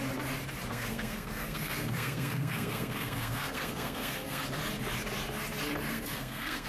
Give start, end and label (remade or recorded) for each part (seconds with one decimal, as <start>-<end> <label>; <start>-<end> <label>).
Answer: 0.0-0.7 recorded; 0.7-4.4 remade; 4.4-5.9 recorded; 5.9-6.7 remade